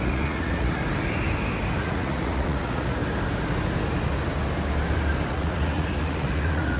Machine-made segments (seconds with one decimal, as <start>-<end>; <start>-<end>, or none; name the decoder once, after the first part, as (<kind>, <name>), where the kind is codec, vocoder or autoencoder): 0.0-0.8 (vocoder, Vocos); 1.8-3.0; 5.3-6.8